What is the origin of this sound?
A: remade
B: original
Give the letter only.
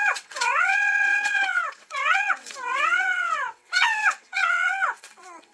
A